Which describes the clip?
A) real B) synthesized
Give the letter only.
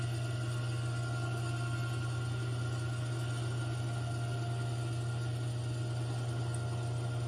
A